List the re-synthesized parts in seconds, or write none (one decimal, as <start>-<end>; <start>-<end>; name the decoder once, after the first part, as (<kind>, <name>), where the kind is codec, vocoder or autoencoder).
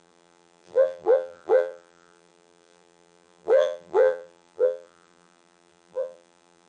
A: 0.0-6.7 (vocoder, BigVGAN v2)